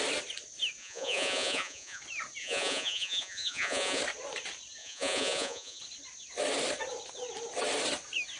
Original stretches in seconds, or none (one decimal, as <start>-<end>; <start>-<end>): 0.0-0.8; 2.0-2.4; 4.0-4.8; 5.8-8.4